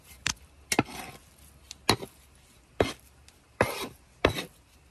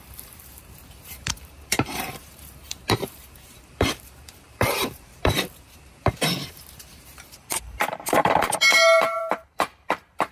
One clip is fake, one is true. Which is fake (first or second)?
second